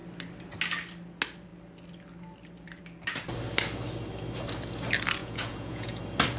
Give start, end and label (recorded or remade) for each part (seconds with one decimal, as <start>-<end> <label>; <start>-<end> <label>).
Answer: 0.0-5.2 recorded; 5.2-6.0 remade; 6.0-6.4 recorded